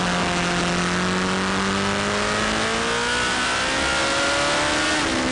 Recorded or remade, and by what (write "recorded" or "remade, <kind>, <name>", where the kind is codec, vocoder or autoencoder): recorded